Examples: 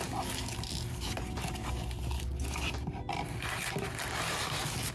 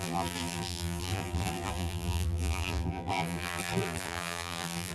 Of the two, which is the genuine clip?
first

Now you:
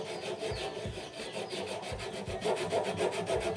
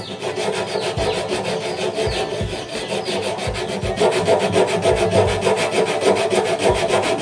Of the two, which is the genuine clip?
second